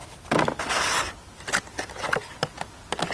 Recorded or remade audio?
recorded